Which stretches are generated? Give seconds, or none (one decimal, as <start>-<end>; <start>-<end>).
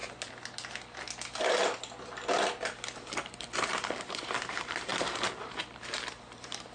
4.0-6.7